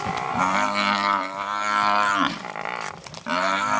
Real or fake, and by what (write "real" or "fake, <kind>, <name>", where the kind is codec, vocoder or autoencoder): real